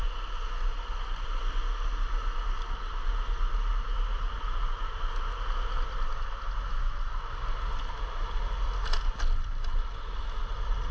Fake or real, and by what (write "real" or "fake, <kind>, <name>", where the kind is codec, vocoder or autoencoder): real